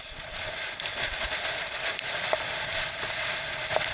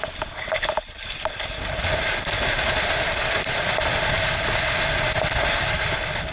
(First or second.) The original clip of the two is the second